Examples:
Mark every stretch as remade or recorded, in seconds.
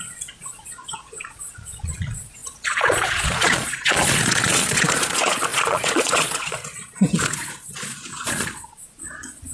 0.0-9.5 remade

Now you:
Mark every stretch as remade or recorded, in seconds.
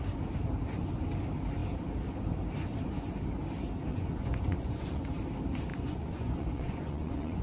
0.0-3.9 recorded; 3.9-5.0 remade; 5.0-5.7 recorded; 5.7-7.4 remade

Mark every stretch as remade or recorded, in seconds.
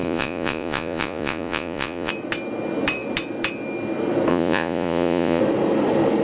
0.0-2.1 remade; 2.1-4.3 recorded; 4.3-5.4 remade; 5.4-6.2 recorded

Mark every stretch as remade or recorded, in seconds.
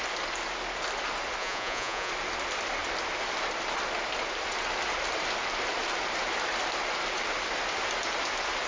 0.0-1.4 recorded; 1.4-2.1 remade; 2.1-8.7 recorded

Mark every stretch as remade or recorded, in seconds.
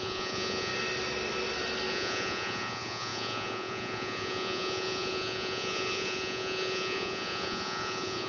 0.0-0.7 remade; 0.7-1.9 recorded; 1.9-8.3 remade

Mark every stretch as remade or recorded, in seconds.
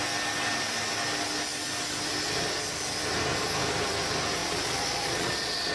0.0-4.4 recorded; 4.4-5.7 remade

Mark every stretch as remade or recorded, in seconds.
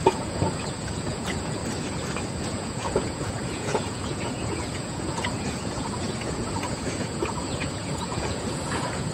0.0-1.6 remade; 1.6-2.4 recorded; 2.4-9.1 remade